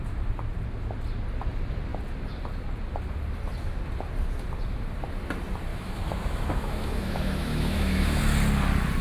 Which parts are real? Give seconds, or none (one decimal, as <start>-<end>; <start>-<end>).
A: 0.0-5.7; 8.2-9.0